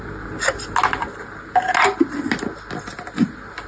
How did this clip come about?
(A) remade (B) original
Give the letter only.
B